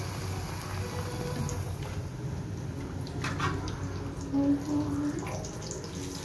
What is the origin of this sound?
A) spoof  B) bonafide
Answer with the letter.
B